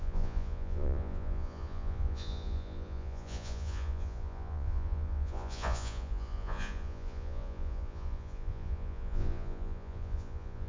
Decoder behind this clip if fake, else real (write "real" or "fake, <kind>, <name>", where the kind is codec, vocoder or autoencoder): fake, vocoder, Vocos